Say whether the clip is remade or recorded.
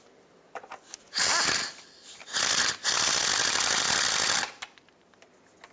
recorded